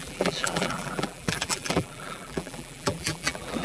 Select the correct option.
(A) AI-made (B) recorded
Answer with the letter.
A